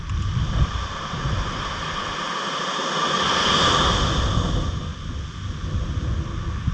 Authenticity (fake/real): real